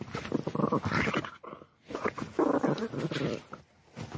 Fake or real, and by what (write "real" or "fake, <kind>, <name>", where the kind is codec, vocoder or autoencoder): real